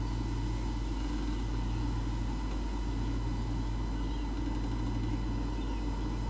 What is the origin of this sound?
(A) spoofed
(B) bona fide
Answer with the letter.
B